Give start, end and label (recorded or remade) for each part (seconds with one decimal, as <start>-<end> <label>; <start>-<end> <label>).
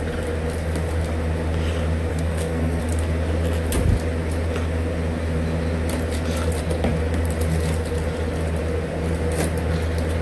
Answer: 0.0-2.1 recorded; 2.1-2.8 remade; 2.8-10.2 recorded